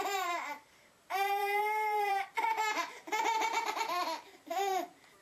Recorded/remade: remade